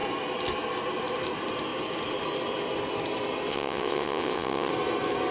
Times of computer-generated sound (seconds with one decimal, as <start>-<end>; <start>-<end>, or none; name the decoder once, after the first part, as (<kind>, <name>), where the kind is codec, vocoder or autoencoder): 3.5-4.7 (vocoder, WaveNeXt)